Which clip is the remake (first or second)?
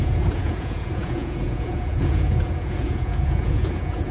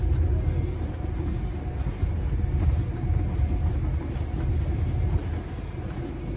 first